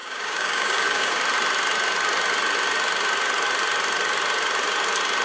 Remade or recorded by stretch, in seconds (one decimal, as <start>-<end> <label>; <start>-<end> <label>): 0.0-1.2 remade; 1.2-5.2 recorded